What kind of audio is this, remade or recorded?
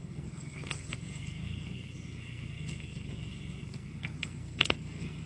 remade